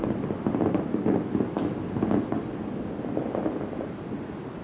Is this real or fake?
real